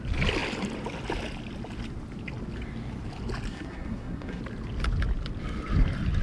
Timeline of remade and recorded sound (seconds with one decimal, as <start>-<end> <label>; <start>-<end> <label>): 0.0-3.5 recorded; 3.5-4.4 remade; 4.4-6.2 recorded